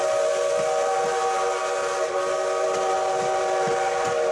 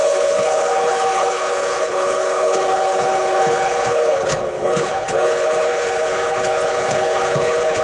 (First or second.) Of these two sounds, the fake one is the second